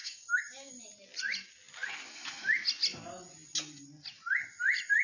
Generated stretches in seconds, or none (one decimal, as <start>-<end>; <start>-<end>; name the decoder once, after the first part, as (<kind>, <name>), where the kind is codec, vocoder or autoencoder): 0.0-0.7 (codec, DAC)

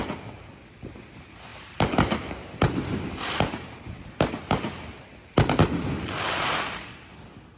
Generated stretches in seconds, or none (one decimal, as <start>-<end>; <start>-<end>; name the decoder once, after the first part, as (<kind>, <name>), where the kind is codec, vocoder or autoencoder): 1.5-4.4 (vocoder, BigVGAN v2)

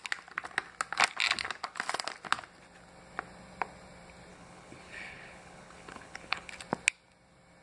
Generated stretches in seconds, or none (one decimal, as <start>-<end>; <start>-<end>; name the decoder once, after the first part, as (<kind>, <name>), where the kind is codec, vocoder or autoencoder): 4.3-6.5 (codec, HILCodec)